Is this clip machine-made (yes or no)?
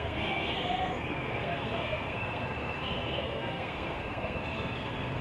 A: yes